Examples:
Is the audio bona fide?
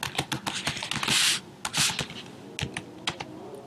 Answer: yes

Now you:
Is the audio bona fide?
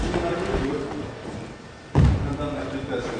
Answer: yes